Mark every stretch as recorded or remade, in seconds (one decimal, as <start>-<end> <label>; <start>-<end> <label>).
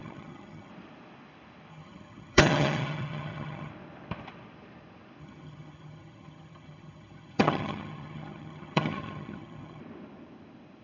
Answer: 0.0-0.7 remade; 0.7-1.7 recorded; 1.7-3.7 remade; 3.7-5.2 recorded; 5.2-9.8 remade; 9.8-10.8 recorded